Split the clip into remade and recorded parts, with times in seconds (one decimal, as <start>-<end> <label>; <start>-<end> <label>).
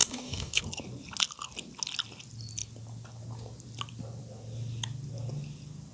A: 0.0-0.6 remade; 0.6-5.9 recorded